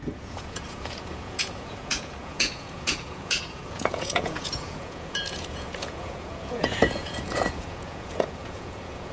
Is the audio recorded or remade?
remade